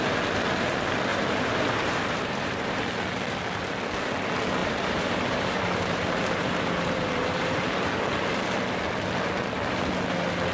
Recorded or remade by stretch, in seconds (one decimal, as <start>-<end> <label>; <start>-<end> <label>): 0.0-1.1 recorded; 1.1-2.8 remade; 2.8-4.6 recorded; 4.6-7.9 remade; 7.9-10.5 recorded